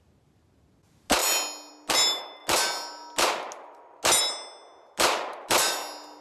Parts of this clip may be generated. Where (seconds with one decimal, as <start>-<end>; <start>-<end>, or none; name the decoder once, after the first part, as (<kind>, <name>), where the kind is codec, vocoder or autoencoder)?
none